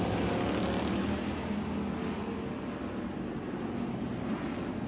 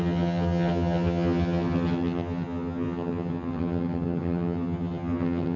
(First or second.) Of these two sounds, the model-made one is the second